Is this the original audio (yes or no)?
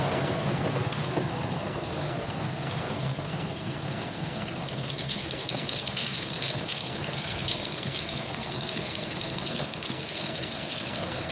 no